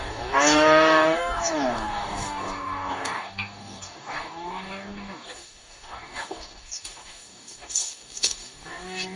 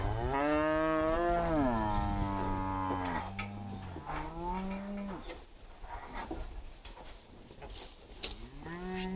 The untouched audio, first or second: second